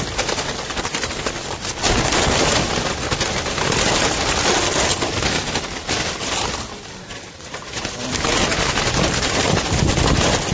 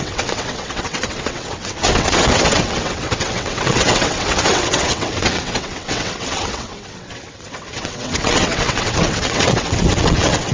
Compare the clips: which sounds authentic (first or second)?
first